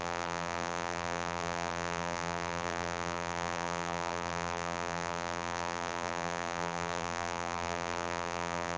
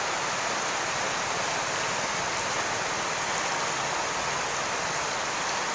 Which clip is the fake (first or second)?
first